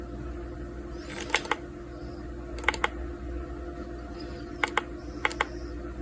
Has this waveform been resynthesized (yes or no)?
no